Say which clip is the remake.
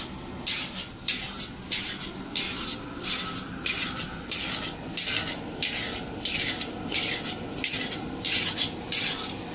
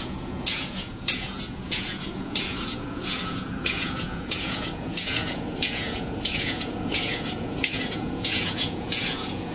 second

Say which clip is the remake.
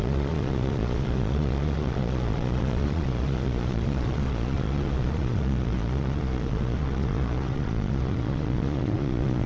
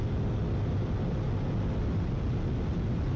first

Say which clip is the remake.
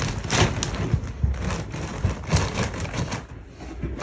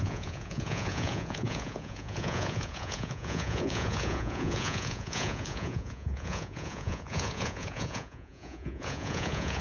second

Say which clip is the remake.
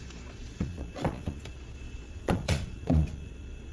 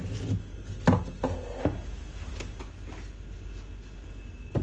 first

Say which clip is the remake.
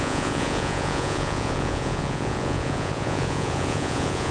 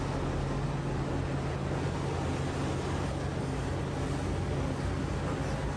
first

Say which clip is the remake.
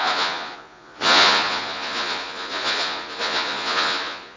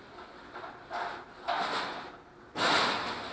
first